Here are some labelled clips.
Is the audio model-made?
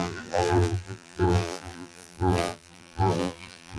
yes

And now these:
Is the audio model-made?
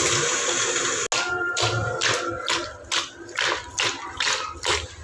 no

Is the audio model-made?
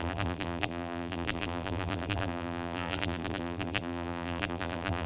yes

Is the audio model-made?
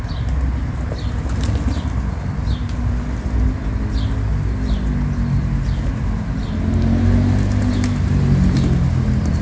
no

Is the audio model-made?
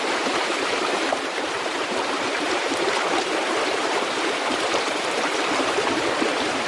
yes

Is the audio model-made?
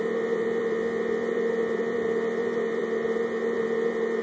yes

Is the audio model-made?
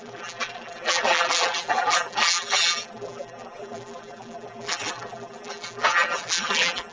yes